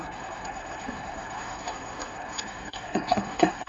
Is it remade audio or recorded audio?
remade